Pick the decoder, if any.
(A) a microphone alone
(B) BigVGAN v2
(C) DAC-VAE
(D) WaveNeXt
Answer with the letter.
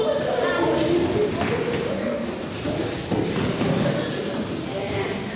A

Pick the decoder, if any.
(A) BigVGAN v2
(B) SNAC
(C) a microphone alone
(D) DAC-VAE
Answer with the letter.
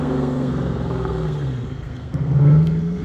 B